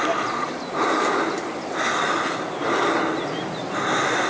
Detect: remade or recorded recorded